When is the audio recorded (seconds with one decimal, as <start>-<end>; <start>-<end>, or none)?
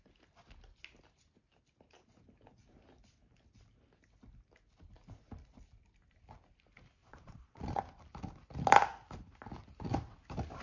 0.0-7.0; 7.8-10.6